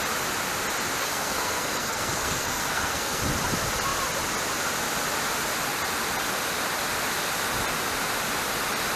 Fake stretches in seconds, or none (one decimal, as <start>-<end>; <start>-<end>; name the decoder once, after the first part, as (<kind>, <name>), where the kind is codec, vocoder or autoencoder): 1.0-3.2 (codec, SNAC)